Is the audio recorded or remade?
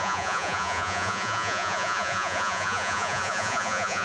remade